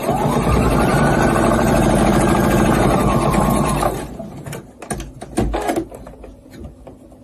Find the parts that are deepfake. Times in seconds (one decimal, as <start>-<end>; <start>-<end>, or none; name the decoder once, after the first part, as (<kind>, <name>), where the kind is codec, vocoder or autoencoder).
0.9-4.1 (vocoder, BigVGAN v2)